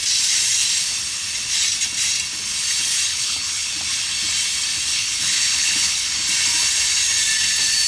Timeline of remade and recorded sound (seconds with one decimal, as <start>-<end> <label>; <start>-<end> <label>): 0.0-3.1 recorded; 3.1-3.7 remade; 3.7-4.9 recorded; 4.9-6.1 remade; 6.1-7.9 recorded